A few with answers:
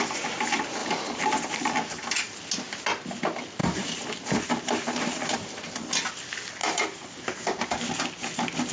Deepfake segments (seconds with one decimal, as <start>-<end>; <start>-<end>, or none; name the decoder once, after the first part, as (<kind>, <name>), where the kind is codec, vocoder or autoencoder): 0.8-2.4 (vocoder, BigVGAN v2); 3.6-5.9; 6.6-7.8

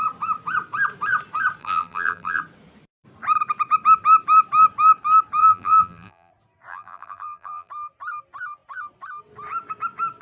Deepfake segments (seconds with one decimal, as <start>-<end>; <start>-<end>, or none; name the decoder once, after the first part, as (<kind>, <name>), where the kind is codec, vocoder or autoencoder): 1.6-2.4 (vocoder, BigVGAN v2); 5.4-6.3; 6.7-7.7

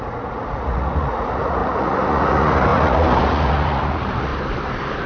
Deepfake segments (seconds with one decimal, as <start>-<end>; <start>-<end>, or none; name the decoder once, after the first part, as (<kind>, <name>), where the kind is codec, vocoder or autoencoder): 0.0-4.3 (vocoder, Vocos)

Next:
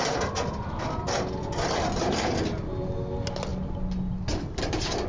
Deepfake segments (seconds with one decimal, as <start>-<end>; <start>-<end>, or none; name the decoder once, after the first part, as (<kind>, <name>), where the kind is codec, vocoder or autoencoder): none

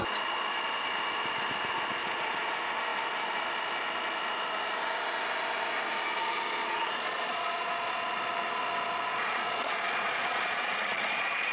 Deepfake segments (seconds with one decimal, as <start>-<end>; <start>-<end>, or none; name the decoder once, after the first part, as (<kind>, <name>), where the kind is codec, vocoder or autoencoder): 2.0-2.5 (vocoder, Vocos); 6.6-8.1; 9.1-11.5

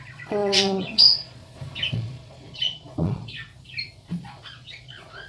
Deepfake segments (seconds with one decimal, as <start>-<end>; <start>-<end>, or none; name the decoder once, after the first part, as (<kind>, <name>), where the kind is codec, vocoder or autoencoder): 0.0-1.4 (vocoder, Vocos); 1.9-3.5; 4.1-5.3

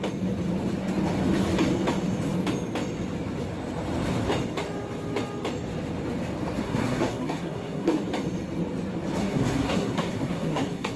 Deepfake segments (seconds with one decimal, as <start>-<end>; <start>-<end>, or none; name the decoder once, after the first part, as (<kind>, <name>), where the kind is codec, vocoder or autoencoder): 6.6-8.0 (codec, SNAC); 9.2-11.0

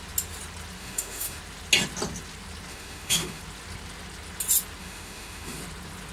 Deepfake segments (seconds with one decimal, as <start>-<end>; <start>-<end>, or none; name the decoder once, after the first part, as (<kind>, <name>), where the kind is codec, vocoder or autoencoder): 0.8-1.4 (autoencoder, DAC-VAE); 2.7-3.4; 4.8-5.6